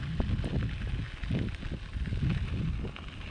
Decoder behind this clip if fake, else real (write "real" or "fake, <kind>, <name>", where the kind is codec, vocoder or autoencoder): real